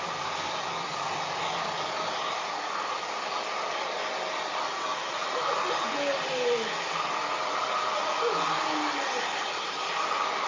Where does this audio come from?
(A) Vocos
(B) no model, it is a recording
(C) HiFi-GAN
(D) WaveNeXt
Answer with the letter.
B